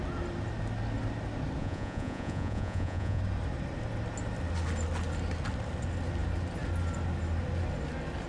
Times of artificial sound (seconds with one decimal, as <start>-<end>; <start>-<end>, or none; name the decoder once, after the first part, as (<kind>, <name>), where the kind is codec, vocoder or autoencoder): 1.6-3.2 (vocoder, Vocos)